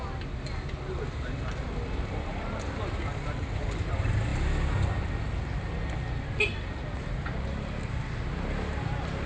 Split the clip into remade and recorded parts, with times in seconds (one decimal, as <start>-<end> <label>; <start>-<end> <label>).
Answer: 0.0-9.3 recorded